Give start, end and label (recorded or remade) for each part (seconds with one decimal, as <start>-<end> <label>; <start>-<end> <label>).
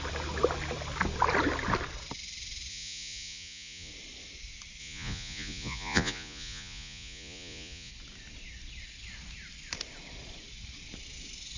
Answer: 0.0-2.7 recorded; 2.7-3.9 remade; 3.9-4.8 recorded; 4.8-7.9 remade; 7.9-11.6 recorded